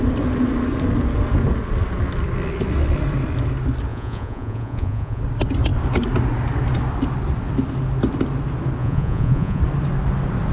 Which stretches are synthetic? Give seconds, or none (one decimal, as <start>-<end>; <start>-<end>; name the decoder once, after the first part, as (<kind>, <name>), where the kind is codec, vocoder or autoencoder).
3.9-5.2 (vocoder, Vocos); 8.8-9.6